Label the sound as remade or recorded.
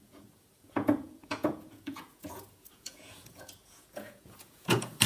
remade